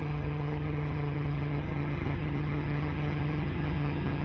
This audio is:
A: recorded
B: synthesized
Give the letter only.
B